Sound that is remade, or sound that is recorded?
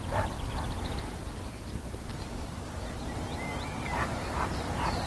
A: recorded